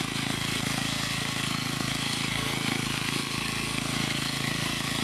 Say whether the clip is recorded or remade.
remade